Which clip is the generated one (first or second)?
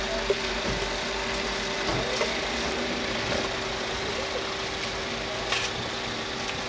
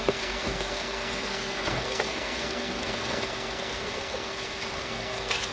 second